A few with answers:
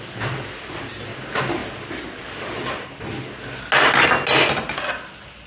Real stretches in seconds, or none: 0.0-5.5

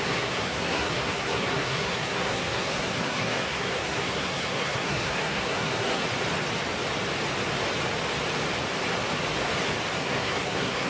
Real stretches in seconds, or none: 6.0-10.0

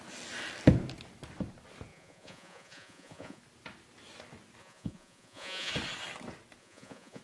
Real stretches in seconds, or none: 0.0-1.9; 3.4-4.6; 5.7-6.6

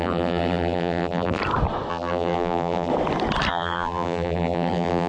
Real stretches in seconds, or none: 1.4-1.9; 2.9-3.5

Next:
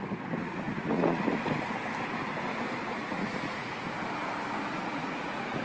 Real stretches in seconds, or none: 0.0-0.4; 1.5-2.9; 3.7-4.7